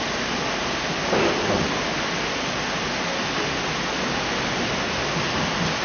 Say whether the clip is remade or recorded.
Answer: recorded